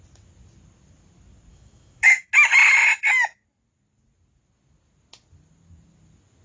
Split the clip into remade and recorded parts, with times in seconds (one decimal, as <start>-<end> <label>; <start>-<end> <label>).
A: 0.0-1.5 recorded; 1.5-2.3 remade; 2.3-6.4 recorded